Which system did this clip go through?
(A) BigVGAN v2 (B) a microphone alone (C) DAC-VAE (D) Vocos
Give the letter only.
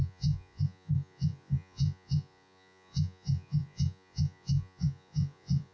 D